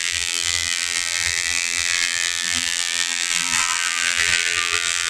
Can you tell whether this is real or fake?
fake